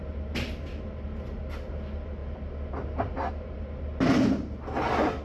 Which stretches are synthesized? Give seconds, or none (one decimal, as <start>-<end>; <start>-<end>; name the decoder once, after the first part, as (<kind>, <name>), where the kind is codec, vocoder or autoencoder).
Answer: none